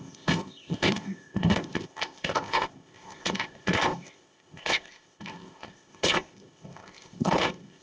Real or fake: fake